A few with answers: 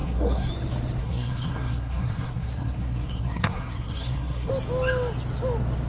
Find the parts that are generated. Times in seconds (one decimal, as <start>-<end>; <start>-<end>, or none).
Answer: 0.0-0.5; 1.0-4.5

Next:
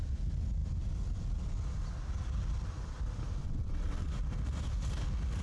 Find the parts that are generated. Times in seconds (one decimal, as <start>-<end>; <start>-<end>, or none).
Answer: 3.4-4.1

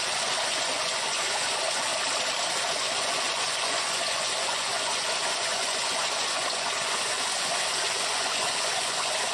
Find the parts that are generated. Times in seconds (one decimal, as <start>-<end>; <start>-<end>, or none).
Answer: 0.0-1.9; 2.7-9.3

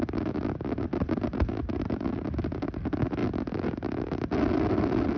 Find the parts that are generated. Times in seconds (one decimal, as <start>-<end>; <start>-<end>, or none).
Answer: none

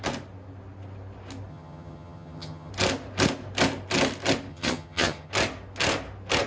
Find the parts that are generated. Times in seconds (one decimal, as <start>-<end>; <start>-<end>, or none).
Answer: 1.5-2.7; 4.5-5.3

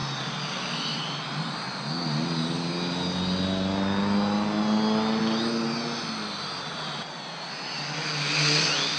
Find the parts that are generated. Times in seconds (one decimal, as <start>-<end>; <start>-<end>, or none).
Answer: none